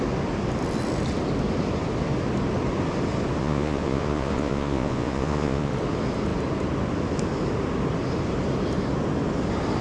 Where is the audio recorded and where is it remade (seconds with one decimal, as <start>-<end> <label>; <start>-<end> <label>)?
0.0-3.4 recorded; 3.4-5.7 remade; 5.7-9.8 recorded